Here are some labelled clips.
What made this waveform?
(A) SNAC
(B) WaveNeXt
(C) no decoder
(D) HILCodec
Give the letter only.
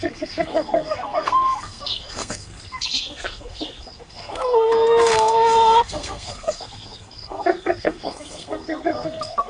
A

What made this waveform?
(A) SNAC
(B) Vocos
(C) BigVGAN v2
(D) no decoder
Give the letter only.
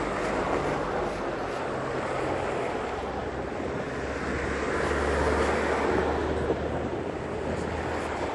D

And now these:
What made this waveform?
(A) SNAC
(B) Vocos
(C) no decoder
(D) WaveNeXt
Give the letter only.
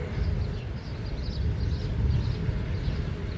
C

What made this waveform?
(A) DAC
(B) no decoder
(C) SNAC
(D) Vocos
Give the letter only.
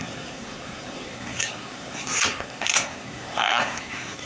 C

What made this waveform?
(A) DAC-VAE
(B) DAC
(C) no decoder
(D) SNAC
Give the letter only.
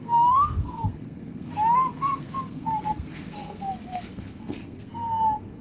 D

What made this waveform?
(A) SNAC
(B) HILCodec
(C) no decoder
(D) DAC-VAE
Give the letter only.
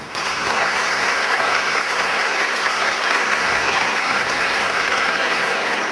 A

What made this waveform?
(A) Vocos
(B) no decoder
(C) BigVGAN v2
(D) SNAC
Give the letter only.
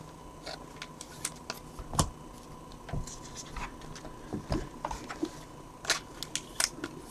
B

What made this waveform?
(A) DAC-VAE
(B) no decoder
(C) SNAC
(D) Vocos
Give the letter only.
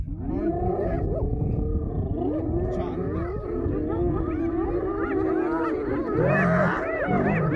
B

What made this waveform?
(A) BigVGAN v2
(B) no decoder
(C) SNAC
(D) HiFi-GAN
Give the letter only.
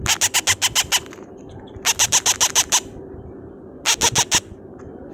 B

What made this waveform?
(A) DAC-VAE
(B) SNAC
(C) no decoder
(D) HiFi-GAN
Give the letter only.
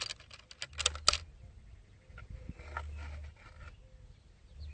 C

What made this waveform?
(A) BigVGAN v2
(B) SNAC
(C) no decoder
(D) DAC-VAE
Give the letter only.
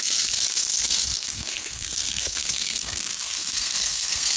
B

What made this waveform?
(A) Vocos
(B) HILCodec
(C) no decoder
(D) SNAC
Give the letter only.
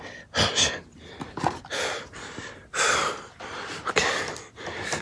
C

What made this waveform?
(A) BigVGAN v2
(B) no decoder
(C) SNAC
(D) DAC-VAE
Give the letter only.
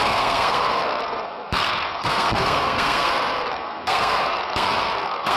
C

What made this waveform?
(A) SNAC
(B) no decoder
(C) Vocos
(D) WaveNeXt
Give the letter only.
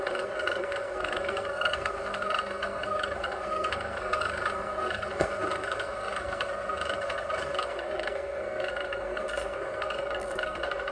A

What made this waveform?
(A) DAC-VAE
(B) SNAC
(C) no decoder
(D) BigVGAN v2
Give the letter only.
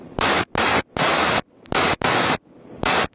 C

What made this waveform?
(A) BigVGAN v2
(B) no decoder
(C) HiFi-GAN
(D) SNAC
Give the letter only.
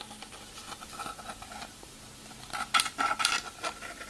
B